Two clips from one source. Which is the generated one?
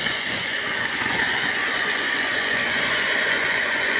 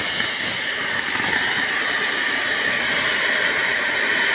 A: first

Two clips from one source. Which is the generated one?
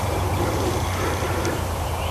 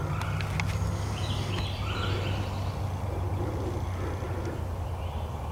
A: first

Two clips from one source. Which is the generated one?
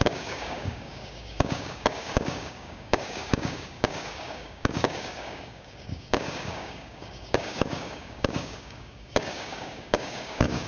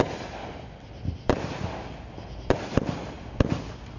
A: first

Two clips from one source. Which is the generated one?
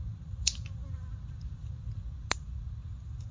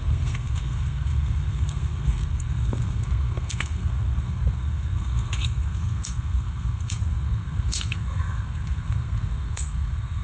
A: second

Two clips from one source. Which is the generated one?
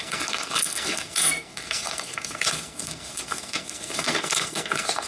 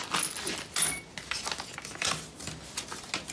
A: first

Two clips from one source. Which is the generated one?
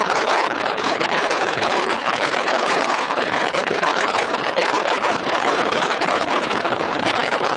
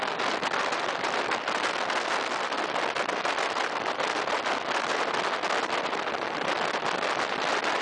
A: first